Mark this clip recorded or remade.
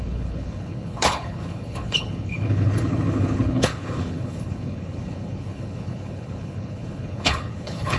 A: remade